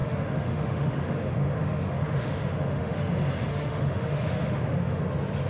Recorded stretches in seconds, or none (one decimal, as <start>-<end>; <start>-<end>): 3.1-3.5; 5.0-5.5